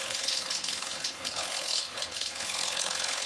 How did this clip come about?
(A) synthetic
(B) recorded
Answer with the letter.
A